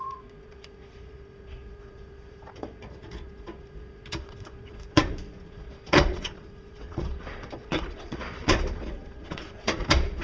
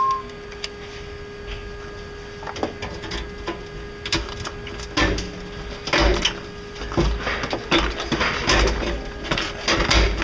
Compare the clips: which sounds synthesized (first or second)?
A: first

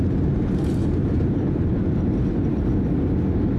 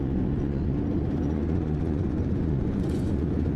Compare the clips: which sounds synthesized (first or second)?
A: second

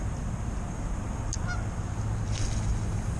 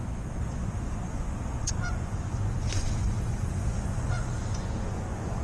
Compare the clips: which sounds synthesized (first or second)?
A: second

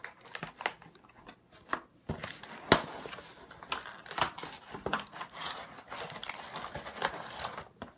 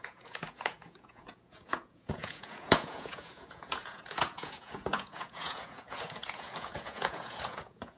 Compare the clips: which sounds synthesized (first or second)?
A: second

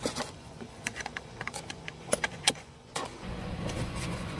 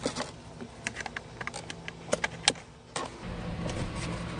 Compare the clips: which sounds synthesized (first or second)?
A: first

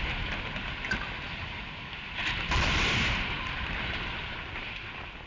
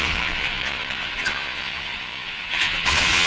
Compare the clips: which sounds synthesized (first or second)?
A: second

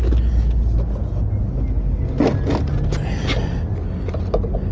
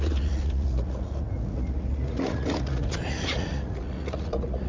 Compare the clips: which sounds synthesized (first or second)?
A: second